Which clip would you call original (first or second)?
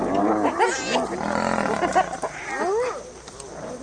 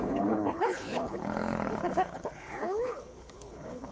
first